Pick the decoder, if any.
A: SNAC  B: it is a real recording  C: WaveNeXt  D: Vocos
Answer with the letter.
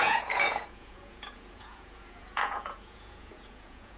D